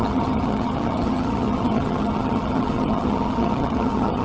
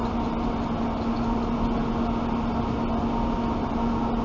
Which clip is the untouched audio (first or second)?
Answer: second